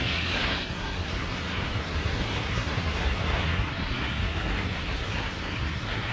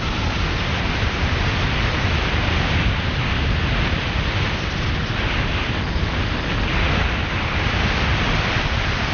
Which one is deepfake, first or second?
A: first